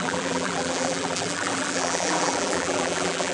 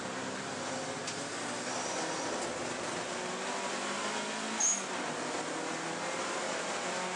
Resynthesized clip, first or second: first